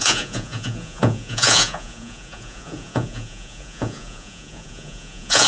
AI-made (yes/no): yes